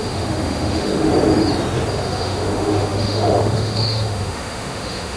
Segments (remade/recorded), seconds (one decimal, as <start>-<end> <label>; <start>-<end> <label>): 0.0-1.1 remade; 1.1-1.9 recorded; 1.9-5.2 remade